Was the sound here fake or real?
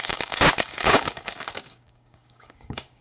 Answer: fake